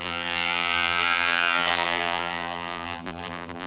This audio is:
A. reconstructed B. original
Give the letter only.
A